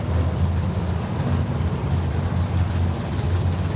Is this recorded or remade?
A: recorded